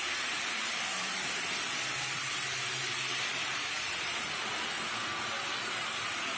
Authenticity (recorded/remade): recorded